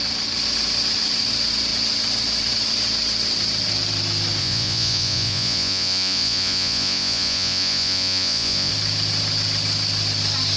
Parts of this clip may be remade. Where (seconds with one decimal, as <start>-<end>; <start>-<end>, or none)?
4.4-8.7